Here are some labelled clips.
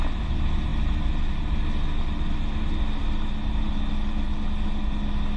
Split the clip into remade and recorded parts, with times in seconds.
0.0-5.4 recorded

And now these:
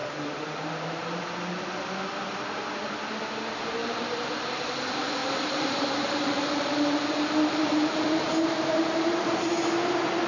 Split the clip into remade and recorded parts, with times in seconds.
0.0-1.2 remade; 1.2-3.8 recorded; 3.8-4.3 remade; 4.3-5.2 recorded; 5.2-9.5 remade; 9.5-10.3 recorded

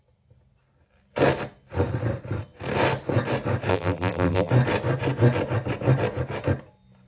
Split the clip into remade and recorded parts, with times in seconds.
0.0-3.7 recorded; 3.7-4.5 remade; 4.5-7.1 recorded

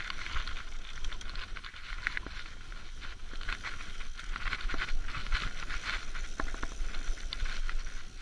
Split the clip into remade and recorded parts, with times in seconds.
0.0-5.2 recorded; 5.2-7.6 remade; 7.6-8.2 recorded

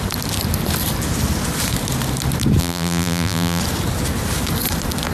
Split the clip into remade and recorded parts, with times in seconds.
0.0-2.6 recorded; 2.6-3.6 remade; 3.6-5.1 recorded

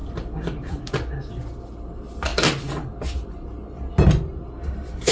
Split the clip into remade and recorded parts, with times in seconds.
0.0-0.8 remade; 0.8-5.1 recorded

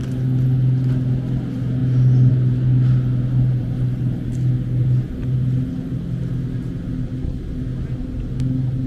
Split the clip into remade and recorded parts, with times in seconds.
0.0-8.9 recorded